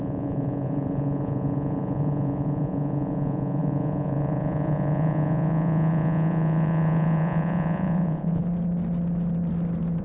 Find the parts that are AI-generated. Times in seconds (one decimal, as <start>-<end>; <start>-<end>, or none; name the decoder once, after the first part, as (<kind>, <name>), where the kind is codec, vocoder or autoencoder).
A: 0.0-8.4 (vocoder, Vocos)